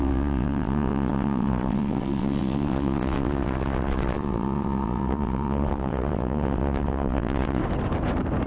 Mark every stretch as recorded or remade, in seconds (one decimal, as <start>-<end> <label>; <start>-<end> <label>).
0.0-7.6 remade; 7.6-8.5 recorded